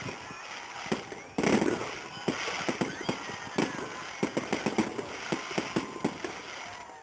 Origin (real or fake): real